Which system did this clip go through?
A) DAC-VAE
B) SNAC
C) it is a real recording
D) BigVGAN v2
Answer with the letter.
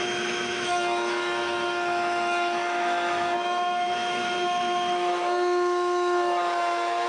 A